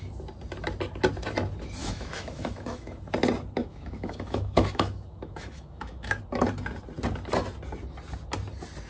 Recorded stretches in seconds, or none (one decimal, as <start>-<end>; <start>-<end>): 0.0-1.8; 3.0-3.6; 6.2-8.9